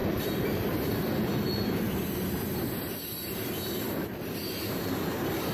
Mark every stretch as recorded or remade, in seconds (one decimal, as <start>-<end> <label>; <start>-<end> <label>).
0.0-2.9 remade; 2.9-5.5 recorded